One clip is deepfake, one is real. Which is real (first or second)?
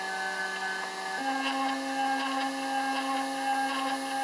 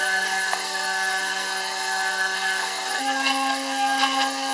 first